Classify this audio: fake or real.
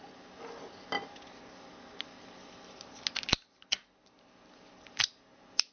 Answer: real